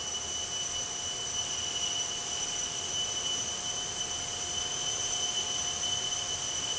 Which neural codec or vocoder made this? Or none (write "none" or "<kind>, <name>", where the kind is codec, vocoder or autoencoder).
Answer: none